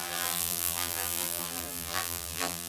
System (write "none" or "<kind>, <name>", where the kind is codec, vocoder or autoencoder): vocoder, BigVGAN v2